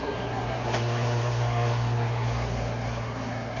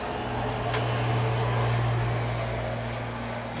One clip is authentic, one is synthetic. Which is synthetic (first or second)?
first